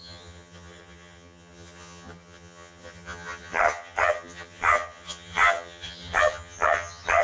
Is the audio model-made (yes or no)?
yes